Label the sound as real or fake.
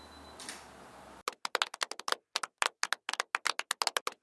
real